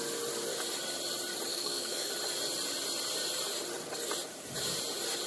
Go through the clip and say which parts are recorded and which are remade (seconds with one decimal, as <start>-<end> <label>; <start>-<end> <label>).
0.0-1.5 recorded; 1.5-2.1 remade; 2.1-5.3 recorded